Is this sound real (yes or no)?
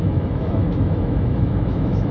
no